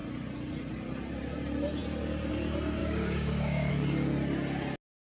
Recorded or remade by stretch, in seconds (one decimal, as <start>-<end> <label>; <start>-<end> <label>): 0.0-2.8 recorded; 2.8-3.7 remade; 3.7-5.0 recorded